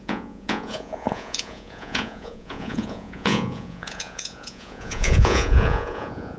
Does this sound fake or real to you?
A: fake